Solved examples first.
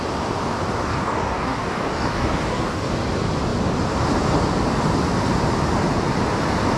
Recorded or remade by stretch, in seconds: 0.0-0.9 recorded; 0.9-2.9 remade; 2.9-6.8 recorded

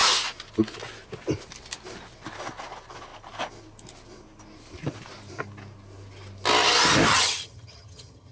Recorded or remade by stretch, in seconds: 0.0-7.1 recorded; 7.1-8.3 remade

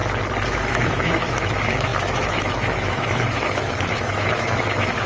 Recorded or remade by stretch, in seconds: 0.0-0.5 recorded; 0.5-5.1 remade

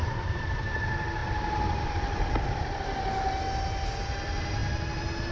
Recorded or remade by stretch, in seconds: 0.0-1.2 recorded; 1.2-2.8 remade; 2.8-5.3 recorded

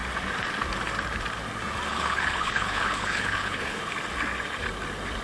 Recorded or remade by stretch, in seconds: 0.0-1.9 recorded; 1.9-3.8 remade; 3.8-5.2 recorded

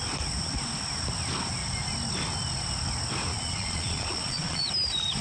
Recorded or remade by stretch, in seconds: 0.0-3.3 recorded; 3.3-4.7 remade; 4.7-5.2 recorded

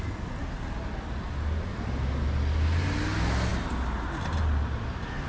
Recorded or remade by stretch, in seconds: 0.0-5.3 recorded

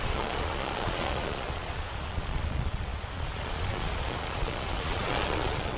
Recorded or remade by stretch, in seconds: 0.0-5.8 remade